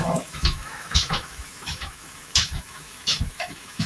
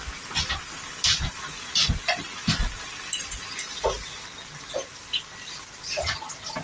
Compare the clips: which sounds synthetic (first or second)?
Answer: first